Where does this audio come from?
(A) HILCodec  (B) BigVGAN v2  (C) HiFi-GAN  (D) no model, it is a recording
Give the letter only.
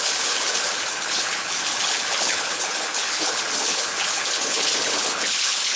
A